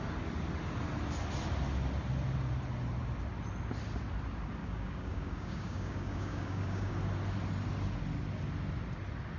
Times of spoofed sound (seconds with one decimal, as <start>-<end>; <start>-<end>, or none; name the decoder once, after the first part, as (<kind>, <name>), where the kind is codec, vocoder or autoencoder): 4.6-6.9 (codec, DAC)